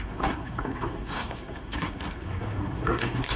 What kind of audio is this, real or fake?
fake